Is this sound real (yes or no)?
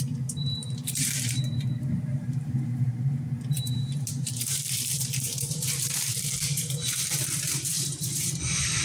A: no